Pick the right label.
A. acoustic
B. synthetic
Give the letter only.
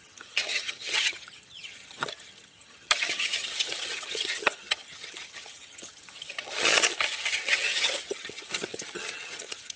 B